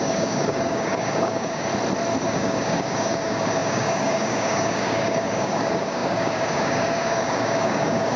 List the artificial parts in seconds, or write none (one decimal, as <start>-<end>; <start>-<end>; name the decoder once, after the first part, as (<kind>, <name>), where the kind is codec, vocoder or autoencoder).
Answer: 0.0-1.7 (codec, DAC); 2.2-8.2